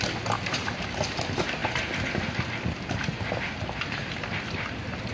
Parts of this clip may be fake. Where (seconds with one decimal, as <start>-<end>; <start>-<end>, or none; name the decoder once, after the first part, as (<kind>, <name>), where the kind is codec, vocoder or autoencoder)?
none